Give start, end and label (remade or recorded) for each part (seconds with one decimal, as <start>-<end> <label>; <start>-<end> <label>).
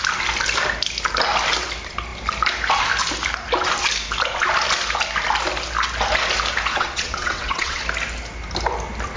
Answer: 0.0-6.7 recorded; 6.7-7.8 remade; 7.8-9.2 recorded